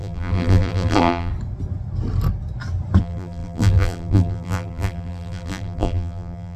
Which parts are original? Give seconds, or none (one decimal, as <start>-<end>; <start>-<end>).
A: 1.3-3.0